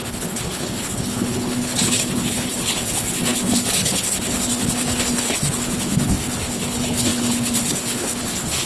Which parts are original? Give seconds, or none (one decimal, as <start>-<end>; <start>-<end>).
none